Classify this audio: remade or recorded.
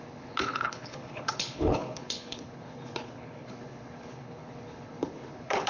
remade